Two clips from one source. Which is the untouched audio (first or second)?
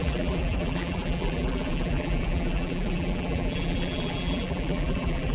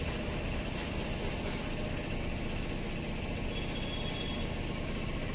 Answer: second